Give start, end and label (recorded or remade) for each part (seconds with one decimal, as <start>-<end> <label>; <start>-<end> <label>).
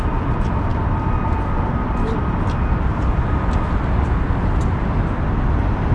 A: 0.0-5.9 recorded